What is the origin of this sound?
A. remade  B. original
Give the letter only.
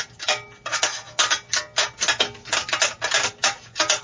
B